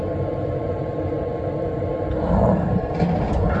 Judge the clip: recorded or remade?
recorded